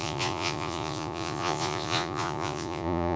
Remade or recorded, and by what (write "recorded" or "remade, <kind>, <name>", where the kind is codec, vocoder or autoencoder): remade, vocoder, Vocos